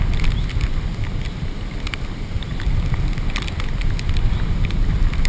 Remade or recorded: recorded